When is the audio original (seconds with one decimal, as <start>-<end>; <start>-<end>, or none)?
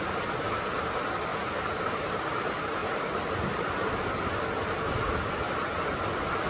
0.0-1.3; 2.2-6.5